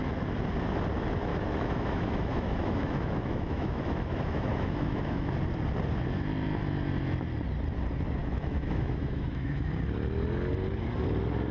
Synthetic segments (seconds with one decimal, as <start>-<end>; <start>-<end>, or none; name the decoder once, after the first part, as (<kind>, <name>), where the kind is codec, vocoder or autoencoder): 1.3-5.3 (autoencoder, DAC-VAE); 8.2-9.7